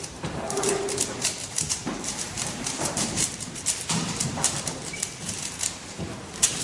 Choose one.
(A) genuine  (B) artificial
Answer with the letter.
B